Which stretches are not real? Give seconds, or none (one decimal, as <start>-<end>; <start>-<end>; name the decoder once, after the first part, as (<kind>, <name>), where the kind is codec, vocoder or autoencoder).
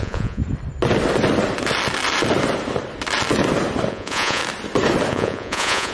0.0-0.4 (vocoder, Vocos); 3.9-4.4; 5.1-5.9